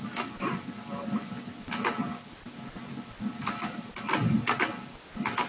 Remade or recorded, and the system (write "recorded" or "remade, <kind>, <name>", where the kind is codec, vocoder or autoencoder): recorded